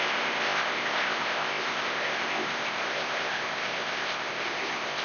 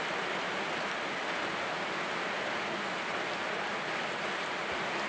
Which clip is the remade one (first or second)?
first